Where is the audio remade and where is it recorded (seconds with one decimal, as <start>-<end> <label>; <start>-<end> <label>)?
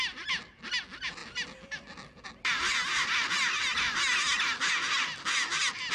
0.0-5.9 recorded